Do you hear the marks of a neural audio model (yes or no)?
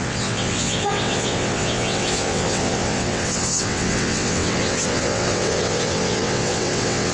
yes